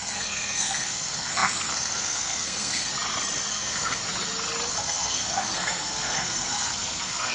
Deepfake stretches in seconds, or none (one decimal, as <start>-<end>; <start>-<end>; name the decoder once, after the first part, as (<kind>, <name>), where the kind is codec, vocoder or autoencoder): 0.0-2.9 (codec, SNAC); 3.5-4.0; 4.7-7.3